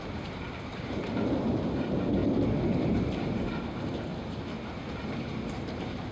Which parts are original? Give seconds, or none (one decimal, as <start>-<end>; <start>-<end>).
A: 2.2-2.8; 4.1-5.2